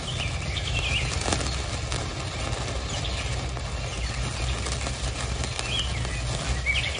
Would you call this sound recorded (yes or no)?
yes